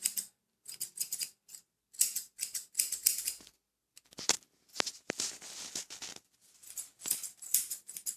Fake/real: real